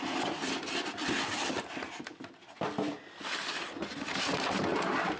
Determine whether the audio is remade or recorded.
recorded